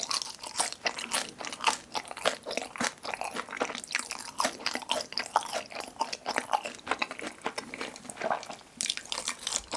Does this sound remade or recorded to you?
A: recorded